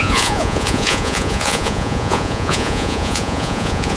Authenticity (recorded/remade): remade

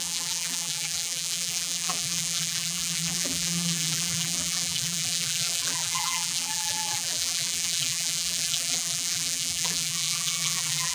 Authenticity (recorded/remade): remade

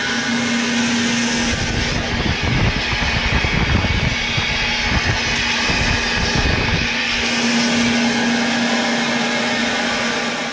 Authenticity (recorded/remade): recorded